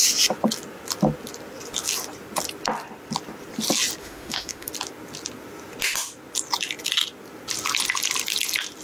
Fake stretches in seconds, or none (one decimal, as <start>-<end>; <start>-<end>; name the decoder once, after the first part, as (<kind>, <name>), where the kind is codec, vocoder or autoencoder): 4.0-4.7 (autoencoder, DAC-VAE)